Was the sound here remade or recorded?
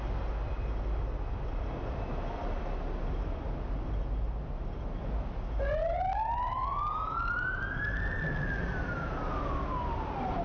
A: recorded